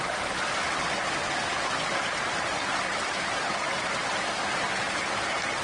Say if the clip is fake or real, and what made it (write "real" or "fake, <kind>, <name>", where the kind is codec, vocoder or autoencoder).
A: real